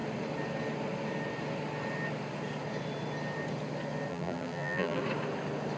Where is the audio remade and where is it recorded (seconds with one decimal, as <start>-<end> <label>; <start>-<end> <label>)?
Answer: 0.0-4.1 recorded; 4.1-5.0 remade; 5.0-5.8 recorded

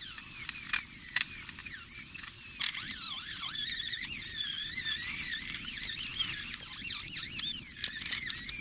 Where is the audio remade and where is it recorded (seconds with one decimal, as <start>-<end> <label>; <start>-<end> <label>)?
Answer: 0.0-8.6 recorded

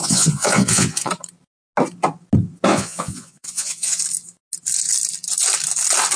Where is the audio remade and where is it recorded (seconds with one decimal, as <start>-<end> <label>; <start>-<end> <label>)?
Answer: 0.0-1.1 remade; 1.1-2.7 recorded; 2.7-4.0 remade; 4.0-6.2 recorded

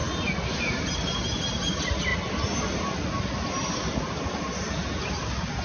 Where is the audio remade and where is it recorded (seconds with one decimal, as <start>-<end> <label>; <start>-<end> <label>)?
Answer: 0.0-5.6 recorded